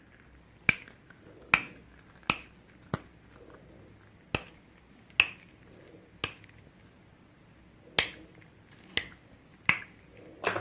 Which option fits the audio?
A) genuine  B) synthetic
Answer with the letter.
A